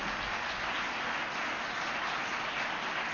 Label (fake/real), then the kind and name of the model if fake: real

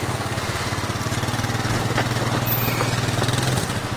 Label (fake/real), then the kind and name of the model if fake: real